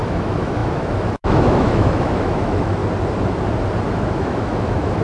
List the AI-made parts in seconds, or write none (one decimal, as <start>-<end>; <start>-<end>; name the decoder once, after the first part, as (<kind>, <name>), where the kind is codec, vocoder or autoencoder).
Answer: 0.0-2.8 (autoencoder, DAC-VAE); 3.9-5.0